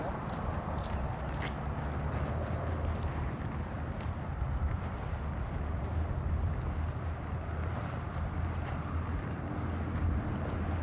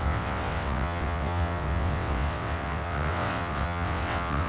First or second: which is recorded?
first